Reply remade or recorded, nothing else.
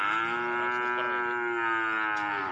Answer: recorded